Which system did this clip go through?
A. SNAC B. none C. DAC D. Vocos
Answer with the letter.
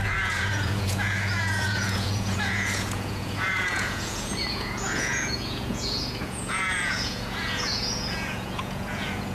D